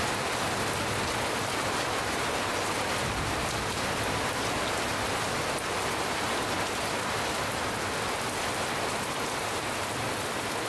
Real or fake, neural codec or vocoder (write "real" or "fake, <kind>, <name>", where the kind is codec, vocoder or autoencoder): real